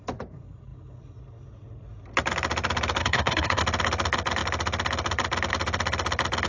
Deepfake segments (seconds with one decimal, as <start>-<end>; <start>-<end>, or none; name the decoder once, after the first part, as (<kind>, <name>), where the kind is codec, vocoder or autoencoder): 3.0-3.6 (codec, SNAC)